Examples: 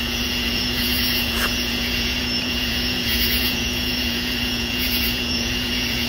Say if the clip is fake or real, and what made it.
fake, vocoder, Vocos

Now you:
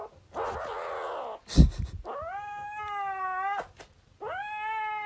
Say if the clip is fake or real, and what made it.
real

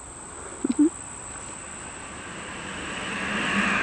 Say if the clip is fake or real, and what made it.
real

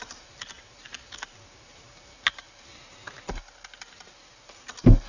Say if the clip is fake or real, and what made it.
real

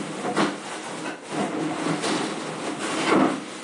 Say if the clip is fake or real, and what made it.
real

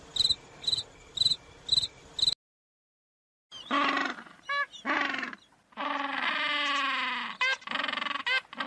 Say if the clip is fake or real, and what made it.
real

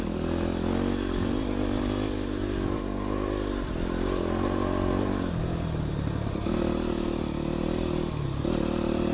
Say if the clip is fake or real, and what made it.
real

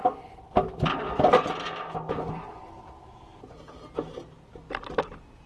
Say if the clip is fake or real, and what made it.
real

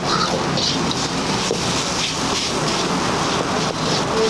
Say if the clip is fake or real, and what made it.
real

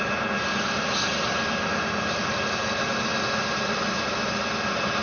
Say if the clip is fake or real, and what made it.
real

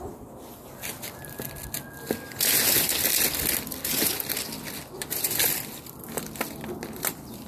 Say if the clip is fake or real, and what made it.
real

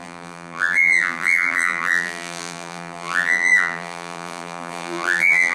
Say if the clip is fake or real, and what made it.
fake, vocoder, BigVGAN v2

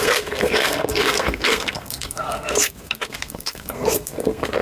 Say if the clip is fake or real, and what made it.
fake, codec, SNAC